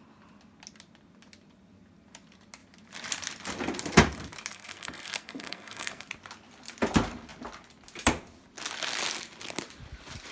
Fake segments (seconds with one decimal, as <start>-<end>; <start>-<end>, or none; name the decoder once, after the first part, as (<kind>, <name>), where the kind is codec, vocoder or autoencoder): 4.5-6.1 (codec, SNAC)